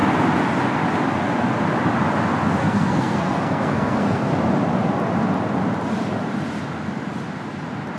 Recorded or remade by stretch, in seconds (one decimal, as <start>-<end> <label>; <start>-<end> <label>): 0.0-2.6 recorded; 2.6-4.3 remade; 4.3-8.0 recorded